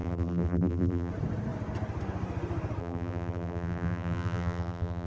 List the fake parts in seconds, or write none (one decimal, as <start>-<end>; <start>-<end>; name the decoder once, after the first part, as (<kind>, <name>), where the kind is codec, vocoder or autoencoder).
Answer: 0.0-1.1 (vocoder, BigVGAN v2); 2.8-5.1